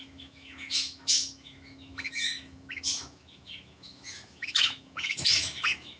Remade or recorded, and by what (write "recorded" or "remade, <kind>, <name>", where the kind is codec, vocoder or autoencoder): remade, autoencoder, DAC-VAE